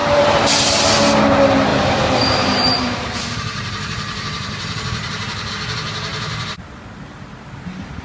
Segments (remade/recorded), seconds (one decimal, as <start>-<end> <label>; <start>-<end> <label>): 0.0-1.7 recorded; 1.7-5.5 remade; 5.5-8.0 recorded